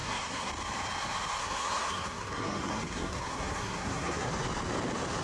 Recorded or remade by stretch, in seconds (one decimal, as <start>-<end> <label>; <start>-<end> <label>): 0.0-0.5 remade; 0.5-1.4 recorded; 1.4-4.3 remade; 4.3-5.2 recorded